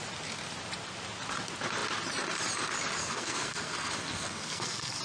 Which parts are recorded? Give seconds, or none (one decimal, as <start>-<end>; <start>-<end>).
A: 0.0-3.0